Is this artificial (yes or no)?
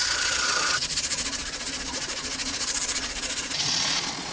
yes